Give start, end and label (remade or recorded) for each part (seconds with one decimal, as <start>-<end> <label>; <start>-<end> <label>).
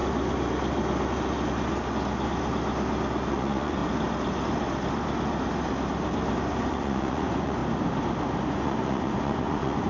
0.0-3.3 recorded; 3.3-3.8 remade; 3.8-6.7 recorded; 6.7-7.6 remade; 7.6-8.5 recorded; 8.5-9.9 remade